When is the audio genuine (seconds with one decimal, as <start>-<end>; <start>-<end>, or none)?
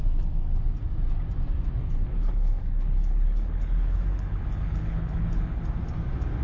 0.0-1.8; 5.6-6.4